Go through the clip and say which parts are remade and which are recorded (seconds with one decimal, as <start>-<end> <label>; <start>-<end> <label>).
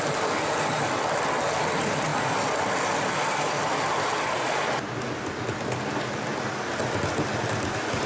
0.0-8.1 recorded